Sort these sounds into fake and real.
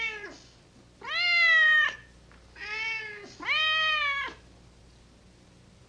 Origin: real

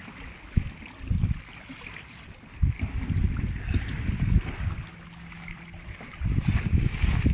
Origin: real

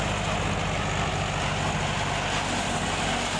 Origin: real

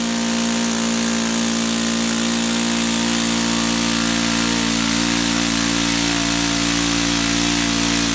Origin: real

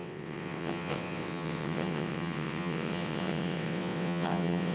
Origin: fake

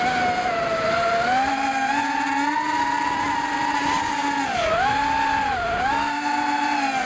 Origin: real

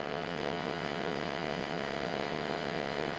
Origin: fake